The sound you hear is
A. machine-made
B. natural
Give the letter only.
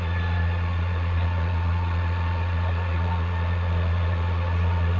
A